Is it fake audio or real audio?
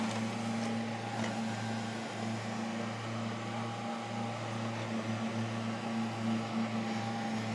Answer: real